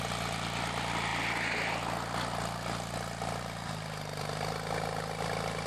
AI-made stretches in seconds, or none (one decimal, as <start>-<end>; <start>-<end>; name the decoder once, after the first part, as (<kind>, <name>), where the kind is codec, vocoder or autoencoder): none